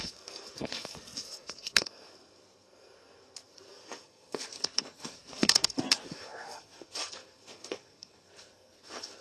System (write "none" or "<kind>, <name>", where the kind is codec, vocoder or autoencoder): codec, SNAC